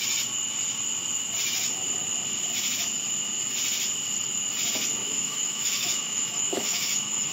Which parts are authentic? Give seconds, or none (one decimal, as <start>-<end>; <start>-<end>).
0.0-5.0